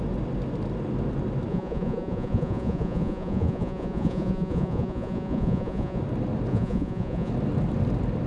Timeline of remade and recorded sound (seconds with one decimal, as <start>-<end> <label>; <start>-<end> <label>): 0.0-1.5 recorded; 1.5-6.0 remade; 6.0-6.5 recorded; 6.5-7.3 remade; 7.3-8.3 recorded